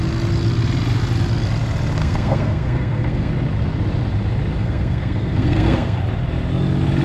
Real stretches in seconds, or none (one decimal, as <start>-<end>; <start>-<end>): 0.0-2.0; 3.3-4.6; 6.0-7.0